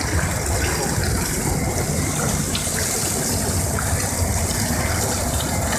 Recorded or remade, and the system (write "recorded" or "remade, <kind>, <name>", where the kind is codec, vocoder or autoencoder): recorded